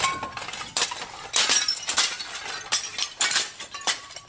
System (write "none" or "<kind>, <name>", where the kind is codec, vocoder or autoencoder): vocoder, BigVGAN v2